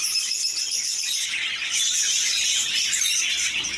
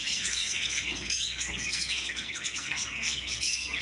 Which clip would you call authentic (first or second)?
first